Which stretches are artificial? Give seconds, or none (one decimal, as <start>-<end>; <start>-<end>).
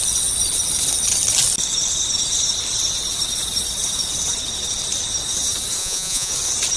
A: 5.8-6.3